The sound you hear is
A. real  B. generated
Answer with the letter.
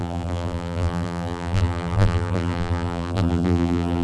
B